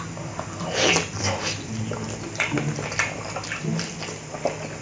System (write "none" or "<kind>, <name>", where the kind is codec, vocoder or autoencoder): none